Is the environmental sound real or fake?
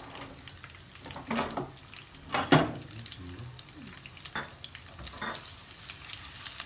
real